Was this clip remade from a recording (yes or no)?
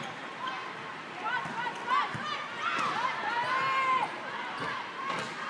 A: no